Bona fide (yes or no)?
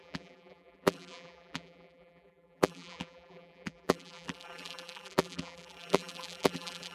no